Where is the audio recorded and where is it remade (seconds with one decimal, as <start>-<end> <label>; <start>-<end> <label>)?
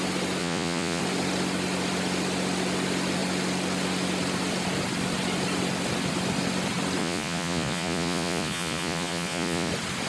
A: 0.0-0.4 recorded; 0.4-1.0 remade; 1.0-7.0 recorded; 7.0-9.7 remade; 9.7-10.1 recorded